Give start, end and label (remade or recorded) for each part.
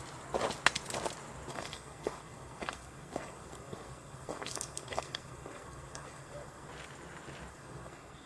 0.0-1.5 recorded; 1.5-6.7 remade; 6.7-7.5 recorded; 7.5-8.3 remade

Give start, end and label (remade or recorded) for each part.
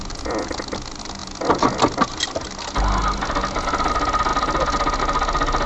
0.0-5.7 recorded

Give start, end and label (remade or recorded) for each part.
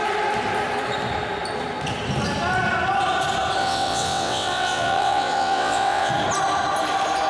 0.0-3.6 recorded; 3.6-6.1 remade; 6.1-7.3 recorded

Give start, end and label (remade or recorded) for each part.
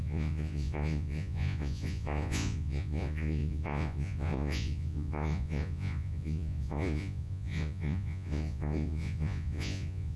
0.0-10.2 remade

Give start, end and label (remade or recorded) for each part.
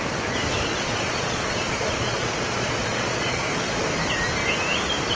0.0-0.7 recorded; 0.7-3.8 remade; 3.8-5.1 recorded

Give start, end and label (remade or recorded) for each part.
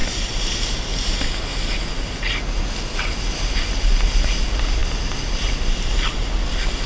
0.0-6.9 recorded